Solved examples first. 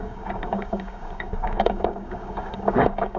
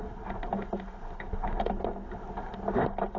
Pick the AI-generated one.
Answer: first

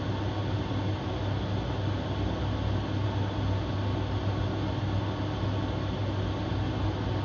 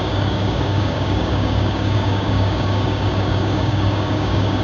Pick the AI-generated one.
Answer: second